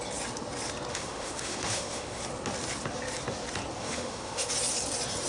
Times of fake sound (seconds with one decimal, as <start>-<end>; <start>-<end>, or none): 0.9-2.2; 3.8-4.5